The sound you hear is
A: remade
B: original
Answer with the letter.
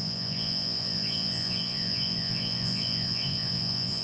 A